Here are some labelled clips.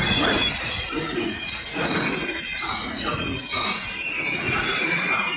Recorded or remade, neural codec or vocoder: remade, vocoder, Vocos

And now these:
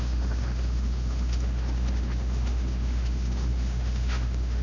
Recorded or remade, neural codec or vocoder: remade, autoencoder, DAC-VAE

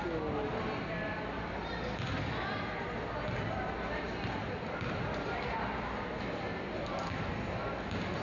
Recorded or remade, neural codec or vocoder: recorded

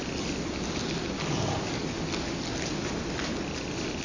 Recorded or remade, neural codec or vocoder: recorded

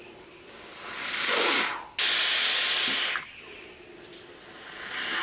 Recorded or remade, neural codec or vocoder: recorded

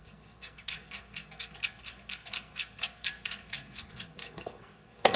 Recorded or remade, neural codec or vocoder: remade, codec, SNAC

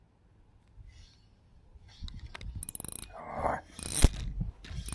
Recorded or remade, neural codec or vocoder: recorded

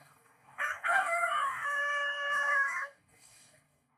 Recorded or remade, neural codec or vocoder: remade, codec, DAC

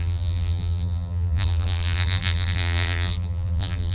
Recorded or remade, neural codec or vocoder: remade, vocoder, BigVGAN v2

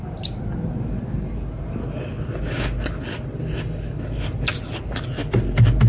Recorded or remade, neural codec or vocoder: recorded